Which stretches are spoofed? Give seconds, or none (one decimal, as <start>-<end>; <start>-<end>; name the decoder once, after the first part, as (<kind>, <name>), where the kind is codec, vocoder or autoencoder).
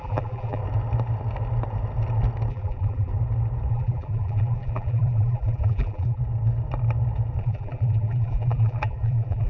0.0-0.6 (vocoder, BigVGAN v2); 2.5-3.1; 3.7-6.2; 7.4-9.5